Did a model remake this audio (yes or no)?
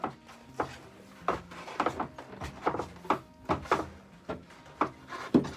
no